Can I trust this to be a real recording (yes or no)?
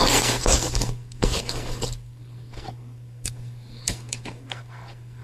no